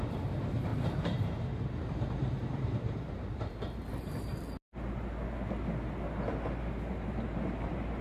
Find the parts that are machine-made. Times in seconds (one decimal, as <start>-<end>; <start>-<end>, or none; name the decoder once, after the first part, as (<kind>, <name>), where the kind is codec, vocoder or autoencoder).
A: 0.0-4.3 (vocoder, BigVGAN v2); 6.9-8.0